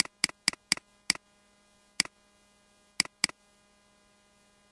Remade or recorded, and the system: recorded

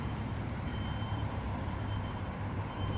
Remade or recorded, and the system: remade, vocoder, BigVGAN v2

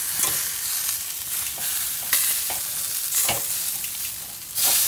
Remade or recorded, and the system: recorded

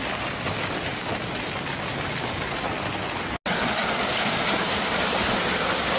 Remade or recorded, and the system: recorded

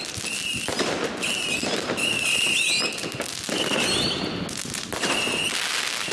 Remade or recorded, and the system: recorded